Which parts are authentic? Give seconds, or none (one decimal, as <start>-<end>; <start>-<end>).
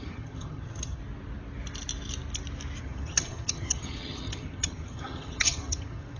1.0-2.8